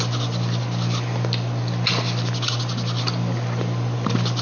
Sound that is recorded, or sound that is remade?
recorded